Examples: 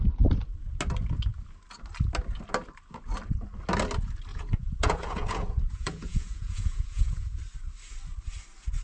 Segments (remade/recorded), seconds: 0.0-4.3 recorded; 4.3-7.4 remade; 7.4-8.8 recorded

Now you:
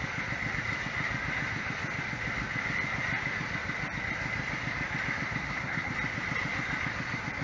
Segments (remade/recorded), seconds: 0.0-5.4 recorded; 5.4-5.9 remade; 5.9-7.4 recorded

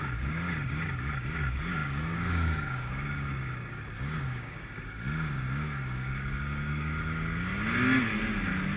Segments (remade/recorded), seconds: 0.0-7.5 remade; 7.5-8.8 recorded